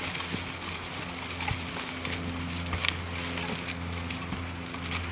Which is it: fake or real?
real